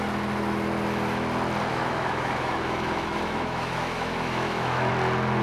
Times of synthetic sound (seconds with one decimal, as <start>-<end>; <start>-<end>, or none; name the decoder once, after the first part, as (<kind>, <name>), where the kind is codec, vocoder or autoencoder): 1.7-4.9 (autoencoder, DAC-VAE)